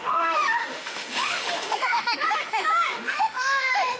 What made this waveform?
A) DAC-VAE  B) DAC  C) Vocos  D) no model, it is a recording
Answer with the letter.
A